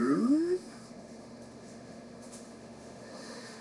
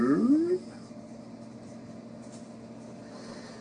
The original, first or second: second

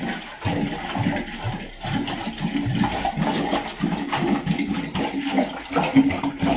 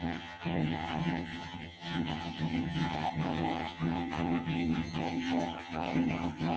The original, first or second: first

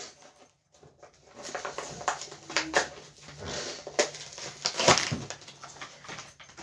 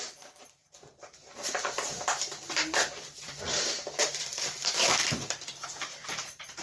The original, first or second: first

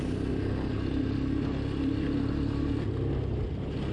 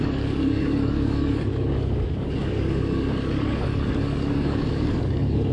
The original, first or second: first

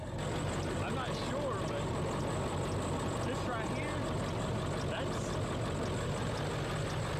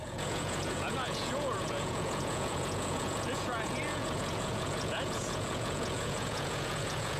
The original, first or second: first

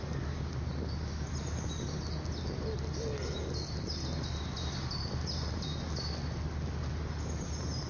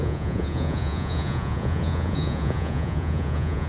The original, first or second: first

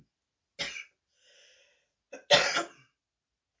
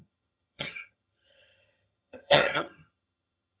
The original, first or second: first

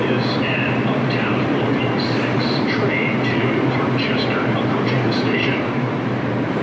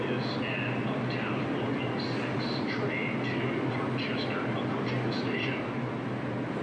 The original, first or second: second